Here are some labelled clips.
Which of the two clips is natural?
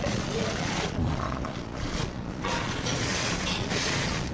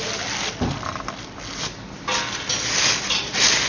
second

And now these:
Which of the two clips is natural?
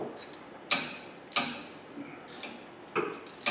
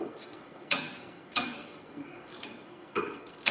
first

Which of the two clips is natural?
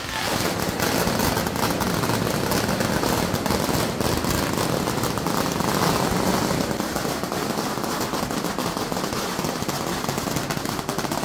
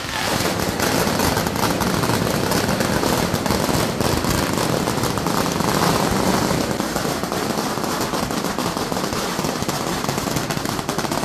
first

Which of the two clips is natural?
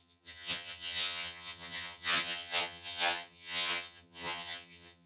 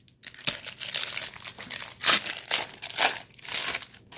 second